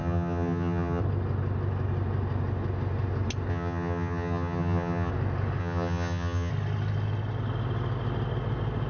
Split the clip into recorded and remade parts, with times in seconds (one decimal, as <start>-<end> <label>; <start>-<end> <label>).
0.0-1.0 remade; 1.0-3.5 recorded; 3.5-5.1 remade; 5.1-5.6 recorded; 5.6-6.5 remade; 6.5-8.9 recorded